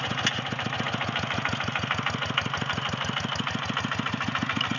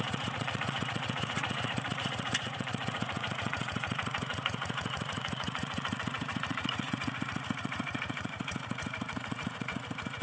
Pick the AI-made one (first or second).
second